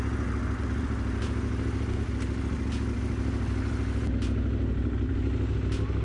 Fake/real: real